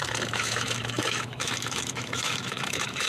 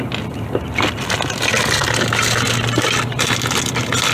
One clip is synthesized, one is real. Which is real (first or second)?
second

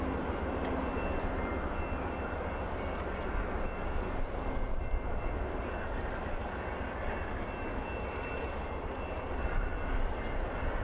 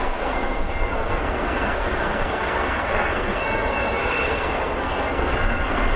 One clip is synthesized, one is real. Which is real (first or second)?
first